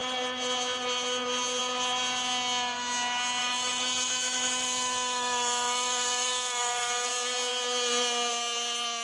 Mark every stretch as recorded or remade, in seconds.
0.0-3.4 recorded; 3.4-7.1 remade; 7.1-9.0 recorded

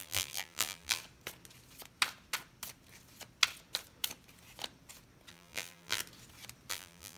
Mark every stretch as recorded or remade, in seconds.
0.0-1.0 remade; 1.0-5.3 recorded; 5.3-6.0 remade; 6.0-6.7 recorded; 6.7-7.2 remade

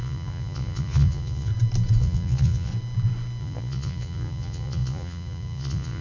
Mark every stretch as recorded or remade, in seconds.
0.0-1.5 remade; 1.5-2.0 recorded; 2.0-2.7 remade; 2.7-3.4 recorded; 3.4-6.0 remade

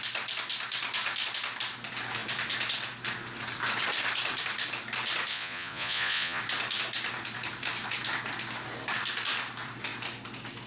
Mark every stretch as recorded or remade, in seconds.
0.0-5.3 recorded; 5.3-6.4 remade; 6.4-10.7 recorded

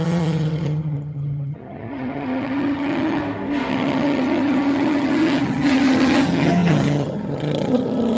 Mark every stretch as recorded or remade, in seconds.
0.0-3.2 remade; 3.2-3.7 recorded; 3.7-8.2 remade

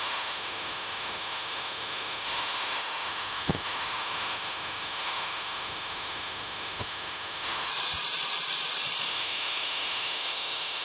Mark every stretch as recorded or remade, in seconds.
0.0-7.7 remade; 7.7-9.1 recorded; 9.1-10.8 remade

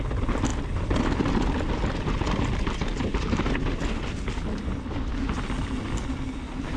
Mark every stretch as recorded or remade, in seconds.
0.0-6.8 recorded